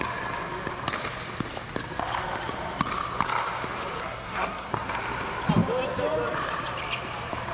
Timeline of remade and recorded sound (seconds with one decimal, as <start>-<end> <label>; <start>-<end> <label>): 0.0-4.0 recorded; 4.0-5.0 remade; 5.0-7.5 recorded